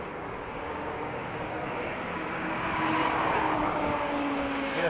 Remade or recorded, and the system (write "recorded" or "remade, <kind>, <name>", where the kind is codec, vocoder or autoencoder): remade, codec, DAC